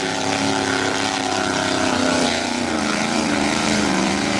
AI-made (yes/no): yes